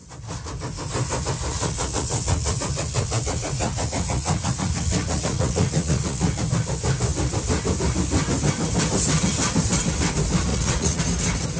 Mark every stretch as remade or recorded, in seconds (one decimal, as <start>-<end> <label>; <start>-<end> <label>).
0.0-1.5 recorded; 1.5-6.4 remade; 6.4-10.5 recorded; 10.5-11.0 remade; 11.0-11.6 recorded